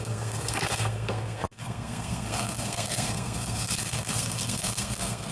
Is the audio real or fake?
fake